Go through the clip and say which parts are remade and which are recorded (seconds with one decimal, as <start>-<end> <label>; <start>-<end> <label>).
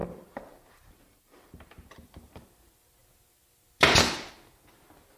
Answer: 0.0-2.0 remade; 2.0-5.2 recorded